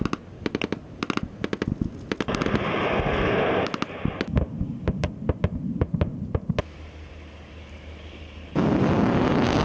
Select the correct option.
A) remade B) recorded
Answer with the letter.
B